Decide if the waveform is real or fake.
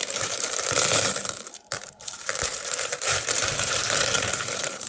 fake